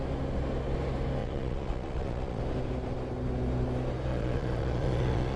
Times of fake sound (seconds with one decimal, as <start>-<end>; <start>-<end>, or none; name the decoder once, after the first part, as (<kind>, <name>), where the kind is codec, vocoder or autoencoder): 1.2-2.4 (vocoder, Vocos); 4.1-5.4